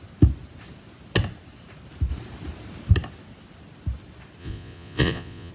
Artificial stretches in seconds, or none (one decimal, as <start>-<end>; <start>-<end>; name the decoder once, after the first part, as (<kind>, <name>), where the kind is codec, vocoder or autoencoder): 4.4-5.5 (vocoder, Vocos)